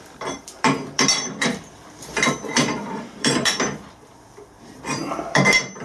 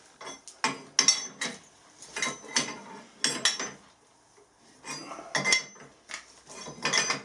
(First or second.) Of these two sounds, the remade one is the first